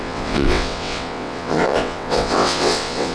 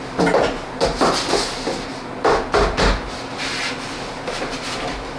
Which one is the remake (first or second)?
first